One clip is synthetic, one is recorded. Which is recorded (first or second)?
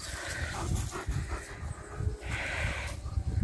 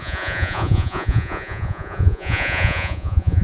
first